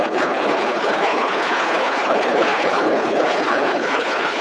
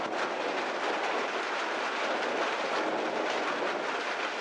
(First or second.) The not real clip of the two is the first